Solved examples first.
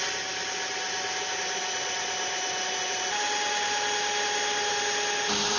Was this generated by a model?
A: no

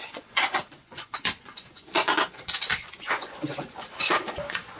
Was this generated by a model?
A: yes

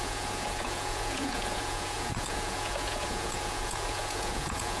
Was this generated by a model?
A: yes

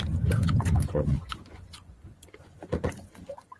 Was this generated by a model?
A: yes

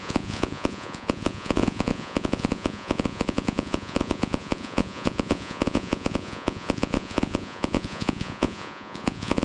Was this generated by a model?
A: yes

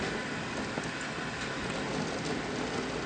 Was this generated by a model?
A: no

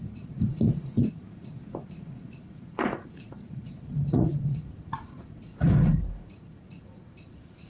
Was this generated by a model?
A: yes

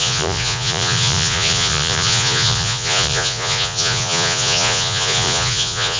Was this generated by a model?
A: yes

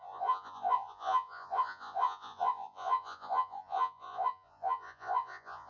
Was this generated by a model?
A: yes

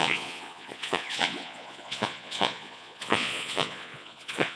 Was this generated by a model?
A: yes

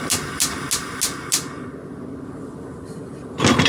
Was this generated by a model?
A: no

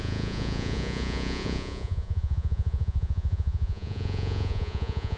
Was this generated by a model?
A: yes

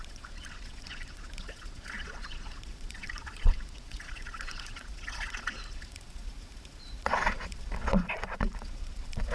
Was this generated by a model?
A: yes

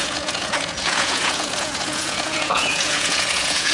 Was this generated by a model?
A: yes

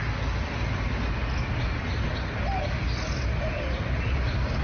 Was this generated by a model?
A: no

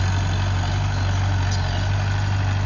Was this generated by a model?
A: no